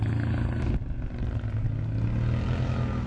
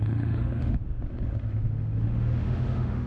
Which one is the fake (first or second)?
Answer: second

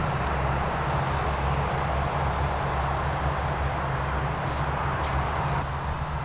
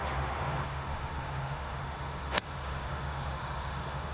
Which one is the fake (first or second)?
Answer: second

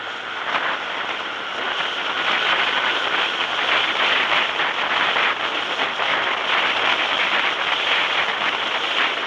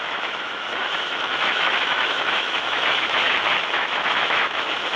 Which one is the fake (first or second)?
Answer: second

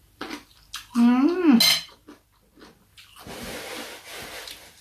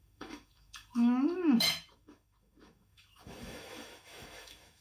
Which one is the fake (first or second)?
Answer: second